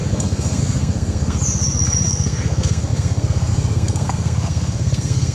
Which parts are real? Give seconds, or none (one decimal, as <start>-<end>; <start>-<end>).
1.4-2.1